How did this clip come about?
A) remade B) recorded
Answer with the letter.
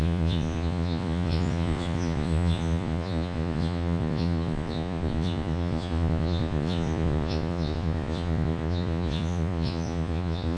A